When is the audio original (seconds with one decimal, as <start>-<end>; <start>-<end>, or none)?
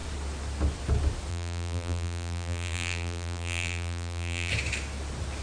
0.0-1.3; 4.5-5.4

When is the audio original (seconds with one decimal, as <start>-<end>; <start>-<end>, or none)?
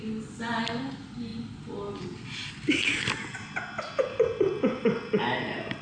0.0-5.8